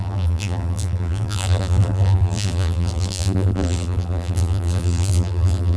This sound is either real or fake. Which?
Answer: fake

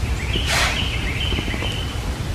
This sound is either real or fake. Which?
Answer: real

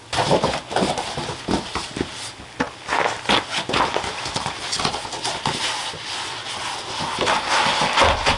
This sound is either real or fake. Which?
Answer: real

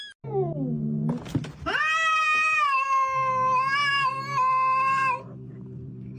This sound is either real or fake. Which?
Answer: real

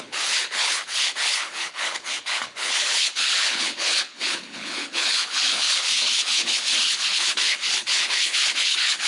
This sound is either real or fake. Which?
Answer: fake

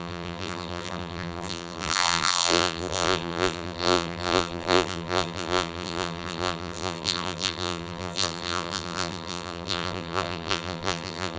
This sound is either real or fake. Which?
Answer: fake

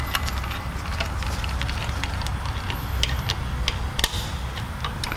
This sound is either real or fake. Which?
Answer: real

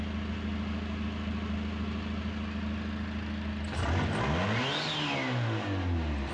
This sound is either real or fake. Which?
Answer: real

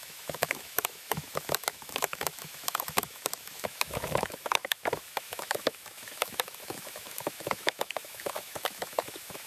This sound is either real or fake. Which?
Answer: fake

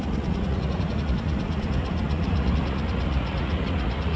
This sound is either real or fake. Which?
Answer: fake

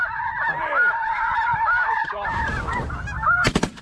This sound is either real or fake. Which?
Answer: fake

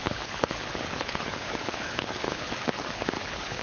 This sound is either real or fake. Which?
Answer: fake